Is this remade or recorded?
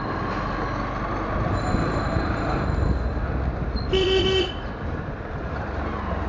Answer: recorded